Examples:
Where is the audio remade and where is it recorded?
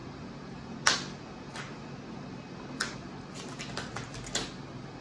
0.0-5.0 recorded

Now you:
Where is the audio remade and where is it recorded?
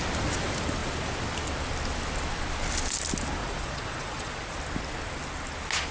0.0-3.4 recorded; 3.4-4.6 remade; 4.6-5.9 recorded